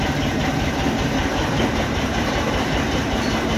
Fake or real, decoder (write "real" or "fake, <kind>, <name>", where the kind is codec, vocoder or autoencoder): fake, vocoder, BigVGAN v2